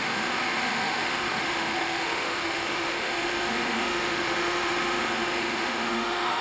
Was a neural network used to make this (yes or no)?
yes